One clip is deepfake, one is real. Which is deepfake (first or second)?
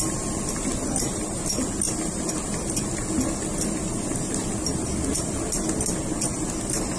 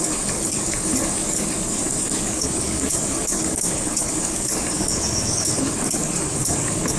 second